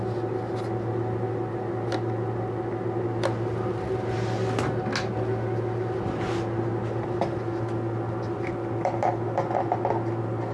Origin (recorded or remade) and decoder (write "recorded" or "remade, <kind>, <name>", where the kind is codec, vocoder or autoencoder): recorded